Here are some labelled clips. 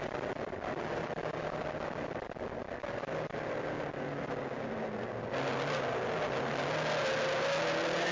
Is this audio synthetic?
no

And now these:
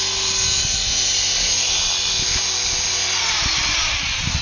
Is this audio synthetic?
no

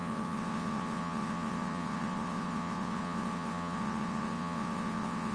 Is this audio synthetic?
yes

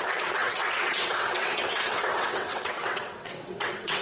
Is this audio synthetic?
yes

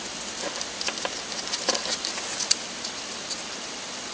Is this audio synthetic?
no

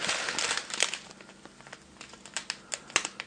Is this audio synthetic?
no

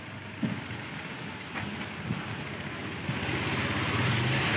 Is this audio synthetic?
no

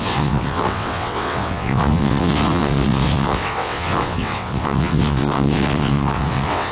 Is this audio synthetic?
yes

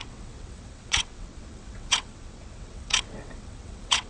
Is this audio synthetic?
yes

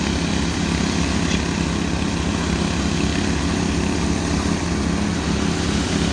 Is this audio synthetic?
no